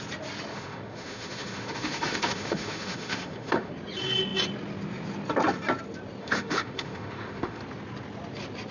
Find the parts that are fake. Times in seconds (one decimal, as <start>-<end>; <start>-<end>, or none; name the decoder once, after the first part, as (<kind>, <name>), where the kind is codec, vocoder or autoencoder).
0.5-3.7 (autoencoder, DAC-VAE); 6.2-7.6